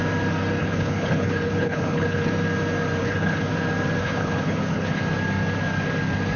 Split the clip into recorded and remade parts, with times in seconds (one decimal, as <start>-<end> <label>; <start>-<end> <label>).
0.0-0.6 recorded; 0.6-2.3 remade; 2.3-3.0 recorded; 3.0-3.5 remade; 3.5-4.0 recorded; 4.0-5.0 remade; 5.0-6.4 recorded